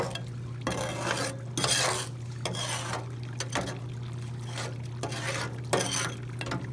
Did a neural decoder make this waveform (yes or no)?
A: no